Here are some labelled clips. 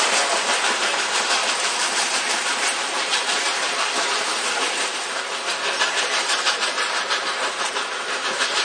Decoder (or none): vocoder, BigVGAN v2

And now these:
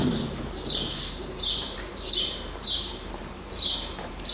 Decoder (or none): vocoder, BigVGAN v2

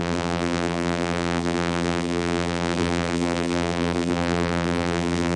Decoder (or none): vocoder, BigVGAN v2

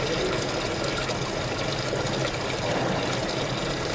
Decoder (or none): none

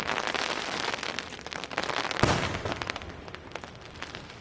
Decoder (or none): vocoder, BigVGAN v2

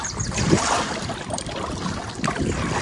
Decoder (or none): vocoder, BigVGAN v2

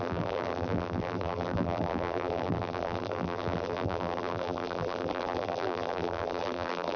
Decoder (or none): vocoder, BigVGAN v2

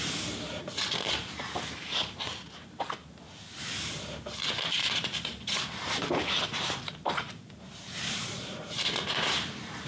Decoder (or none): vocoder, BigVGAN v2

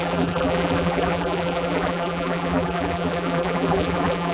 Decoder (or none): vocoder, BigVGAN v2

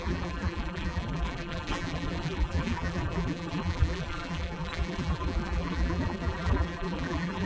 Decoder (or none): vocoder, BigVGAN v2